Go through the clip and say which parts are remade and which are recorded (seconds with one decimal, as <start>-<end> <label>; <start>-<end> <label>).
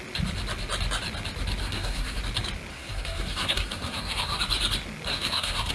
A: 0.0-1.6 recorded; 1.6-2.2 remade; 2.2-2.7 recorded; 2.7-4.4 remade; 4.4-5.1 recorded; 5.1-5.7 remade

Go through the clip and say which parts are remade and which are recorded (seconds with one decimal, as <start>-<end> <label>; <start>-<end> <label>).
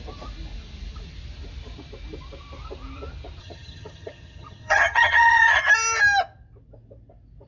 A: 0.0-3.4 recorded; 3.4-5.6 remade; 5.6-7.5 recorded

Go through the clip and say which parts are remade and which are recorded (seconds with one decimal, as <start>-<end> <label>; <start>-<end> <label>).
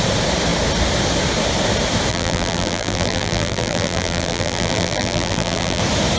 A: 0.0-2.1 recorded; 2.1-5.8 remade; 5.8-6.2 recorded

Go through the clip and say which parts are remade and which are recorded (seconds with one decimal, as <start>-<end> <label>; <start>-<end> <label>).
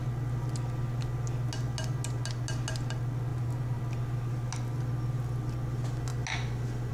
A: 0.0-3.3 recorded; 3.3-3.8 remade; 3.8-6.9 recorded